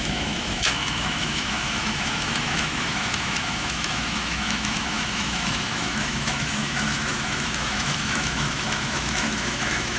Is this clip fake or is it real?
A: fake